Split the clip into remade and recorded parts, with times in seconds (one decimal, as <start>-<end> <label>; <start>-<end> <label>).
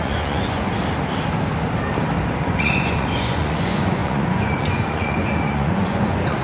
0.0-0.7 remade; 0.7-2.4 recorded; 2.4-6.4 remade